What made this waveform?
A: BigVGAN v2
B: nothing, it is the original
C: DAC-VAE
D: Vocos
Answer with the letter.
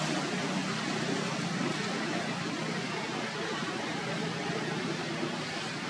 B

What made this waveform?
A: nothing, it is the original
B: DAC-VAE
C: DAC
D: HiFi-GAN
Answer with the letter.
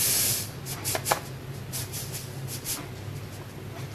A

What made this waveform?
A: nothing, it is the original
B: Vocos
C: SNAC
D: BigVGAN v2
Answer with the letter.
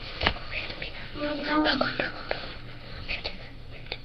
C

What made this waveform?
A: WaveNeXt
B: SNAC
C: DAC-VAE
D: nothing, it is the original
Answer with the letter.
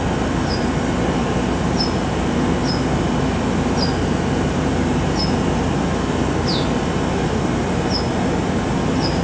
D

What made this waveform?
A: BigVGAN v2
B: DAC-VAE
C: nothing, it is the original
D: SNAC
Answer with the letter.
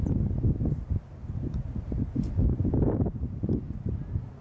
C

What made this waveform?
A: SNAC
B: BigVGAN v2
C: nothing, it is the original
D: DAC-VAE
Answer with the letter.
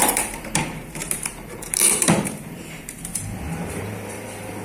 B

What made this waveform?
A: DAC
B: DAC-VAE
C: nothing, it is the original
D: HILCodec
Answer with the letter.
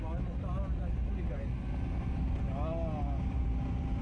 C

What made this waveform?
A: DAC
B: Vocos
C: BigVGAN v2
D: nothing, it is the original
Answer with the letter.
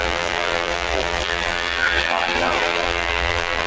C